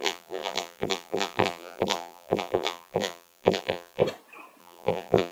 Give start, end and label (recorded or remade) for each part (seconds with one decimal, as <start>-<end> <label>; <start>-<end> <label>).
0.0-4.0 remade; 4.0-4.6 recorded; 4.6-5.3 remade